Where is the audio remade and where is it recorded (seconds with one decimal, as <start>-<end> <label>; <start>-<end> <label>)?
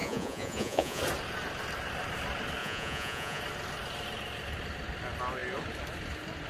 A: 0.0-1.0 remade; 1.0-2.6 recorded; 2.6-3.4 remade; 3.4-6.5 recorded